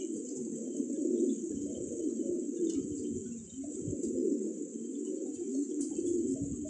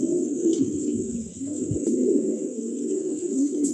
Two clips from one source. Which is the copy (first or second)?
second